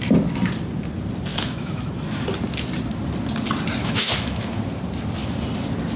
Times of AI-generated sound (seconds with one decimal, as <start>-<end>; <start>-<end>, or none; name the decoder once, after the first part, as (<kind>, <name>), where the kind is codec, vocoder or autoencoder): 1.3-1.9 (autoencoder, DAC-VAE); 3.8-4.6